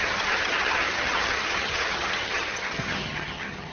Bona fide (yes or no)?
no